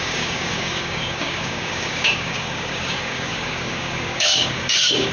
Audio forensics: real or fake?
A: fake